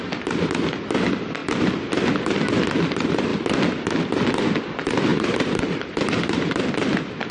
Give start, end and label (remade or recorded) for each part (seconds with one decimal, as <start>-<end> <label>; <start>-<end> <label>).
0.0-5.1 recorded; 5.1-6.6 remade; 6.6-7.3 recorded